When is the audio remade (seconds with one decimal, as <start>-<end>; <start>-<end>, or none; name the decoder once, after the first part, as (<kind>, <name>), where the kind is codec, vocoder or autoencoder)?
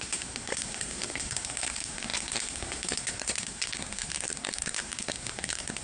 0.0-5.8 (codec, SNAC)